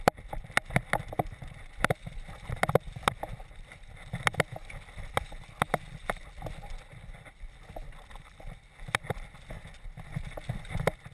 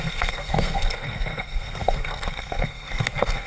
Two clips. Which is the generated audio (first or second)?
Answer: second